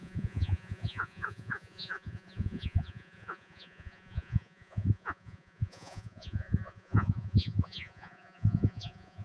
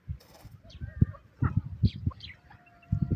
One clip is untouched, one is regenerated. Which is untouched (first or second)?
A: second